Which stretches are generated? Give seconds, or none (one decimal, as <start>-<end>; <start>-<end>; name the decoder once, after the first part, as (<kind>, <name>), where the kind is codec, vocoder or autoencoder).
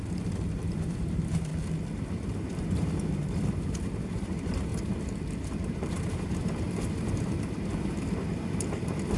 0.0-1.5 (vocoder, BigVGAN v2); 2.3-4.7; 5.3-7.7; 8.3-9.2